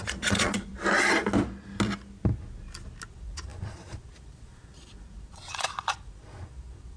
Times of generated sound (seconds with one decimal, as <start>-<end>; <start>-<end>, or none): 0.0-0.7; 3.1-7.0